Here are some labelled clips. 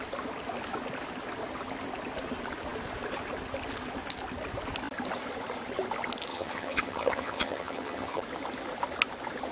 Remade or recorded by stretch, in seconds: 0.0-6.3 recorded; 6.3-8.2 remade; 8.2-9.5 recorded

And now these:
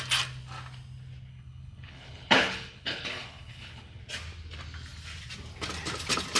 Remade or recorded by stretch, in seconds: 0.0-1.3 recorded; 1.3-4.0 remade; 4.0-6.4 recorded

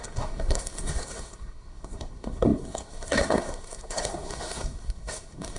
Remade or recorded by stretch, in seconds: 0.0-5.6 remade